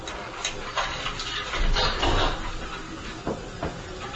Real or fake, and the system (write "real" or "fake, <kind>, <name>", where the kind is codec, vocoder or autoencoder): real